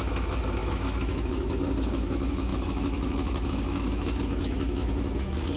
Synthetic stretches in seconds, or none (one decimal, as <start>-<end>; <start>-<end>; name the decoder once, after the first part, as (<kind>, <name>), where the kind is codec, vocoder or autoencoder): 0.0-5.6 (autoencoder, DAC-VAE)